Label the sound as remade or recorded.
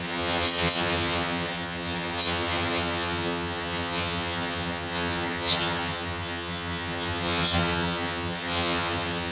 remade